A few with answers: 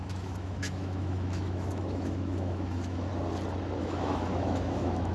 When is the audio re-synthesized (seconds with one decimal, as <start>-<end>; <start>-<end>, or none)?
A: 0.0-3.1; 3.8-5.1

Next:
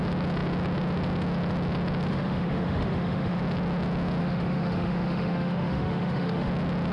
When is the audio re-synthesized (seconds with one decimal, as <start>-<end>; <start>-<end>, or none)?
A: 2.1-3.4; 4.2-6.5

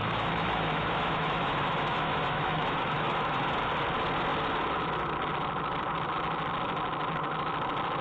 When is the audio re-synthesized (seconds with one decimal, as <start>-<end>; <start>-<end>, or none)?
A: 0.0-3.6